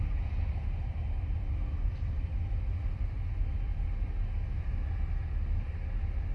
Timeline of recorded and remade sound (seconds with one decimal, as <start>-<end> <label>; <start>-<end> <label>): 0.0-6.3 recorded